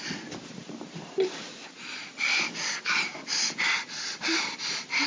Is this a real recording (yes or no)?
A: yes